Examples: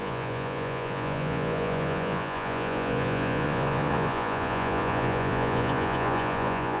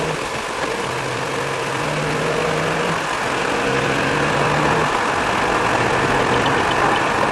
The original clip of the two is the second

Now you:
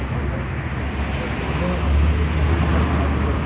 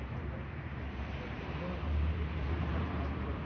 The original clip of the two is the first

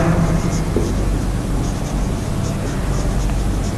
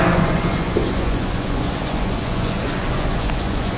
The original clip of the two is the first